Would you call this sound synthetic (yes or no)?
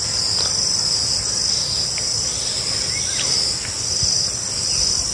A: no